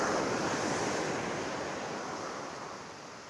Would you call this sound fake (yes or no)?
no